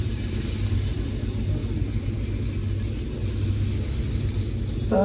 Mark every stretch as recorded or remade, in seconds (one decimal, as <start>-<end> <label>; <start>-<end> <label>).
0.0-5.0 recorded